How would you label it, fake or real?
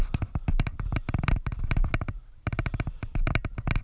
real